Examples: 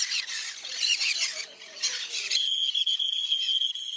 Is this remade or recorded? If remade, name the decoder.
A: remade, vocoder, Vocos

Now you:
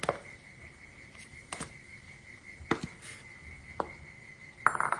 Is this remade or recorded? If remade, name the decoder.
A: recorded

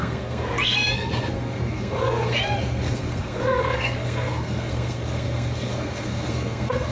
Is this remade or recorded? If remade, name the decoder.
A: remade, codec, SNAC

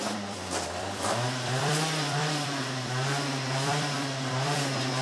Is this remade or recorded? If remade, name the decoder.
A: remade, vocoder, BigVGAN v2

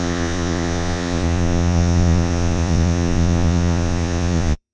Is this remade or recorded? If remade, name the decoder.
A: remade, vocoder, Vocos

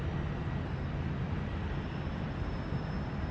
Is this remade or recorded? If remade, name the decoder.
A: recorded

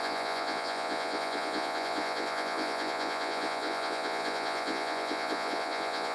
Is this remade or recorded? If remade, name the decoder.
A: remade, vocoder, Vocos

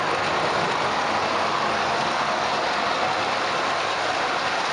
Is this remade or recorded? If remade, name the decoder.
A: recorded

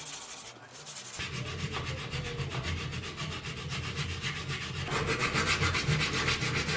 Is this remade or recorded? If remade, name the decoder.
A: recorded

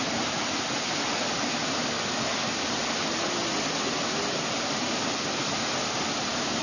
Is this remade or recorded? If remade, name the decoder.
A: recorded